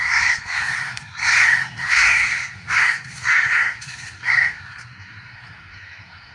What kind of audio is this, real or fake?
fake